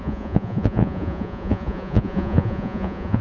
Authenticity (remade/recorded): remade